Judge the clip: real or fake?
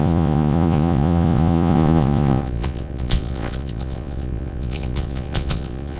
fake